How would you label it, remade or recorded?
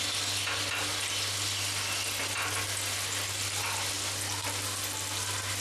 recorded